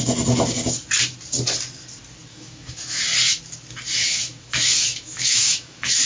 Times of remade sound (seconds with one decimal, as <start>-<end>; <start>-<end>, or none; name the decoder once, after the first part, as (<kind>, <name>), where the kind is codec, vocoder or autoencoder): 2.3-3.0 (autoencoder, DAC-VAE); 4.0-6.1